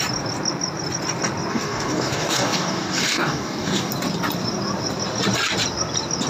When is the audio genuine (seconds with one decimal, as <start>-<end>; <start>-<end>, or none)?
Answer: 0.0-1.5; 3.9-6.3